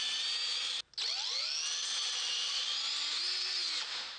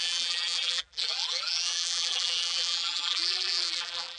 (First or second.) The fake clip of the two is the second